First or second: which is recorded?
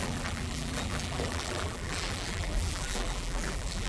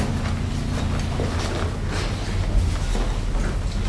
second